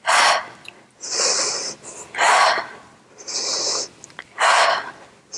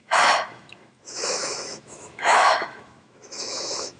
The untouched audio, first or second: first